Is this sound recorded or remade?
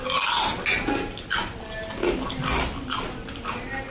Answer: recorded